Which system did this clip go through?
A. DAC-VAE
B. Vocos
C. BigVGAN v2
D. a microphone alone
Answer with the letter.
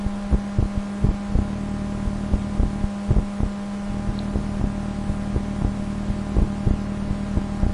D